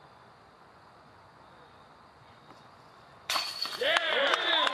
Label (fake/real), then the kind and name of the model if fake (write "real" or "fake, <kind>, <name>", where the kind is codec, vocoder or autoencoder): fake, vocoder, Vocos